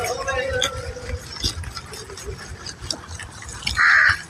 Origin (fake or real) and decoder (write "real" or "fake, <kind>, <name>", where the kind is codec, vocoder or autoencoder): real